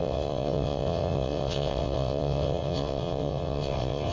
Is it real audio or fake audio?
fake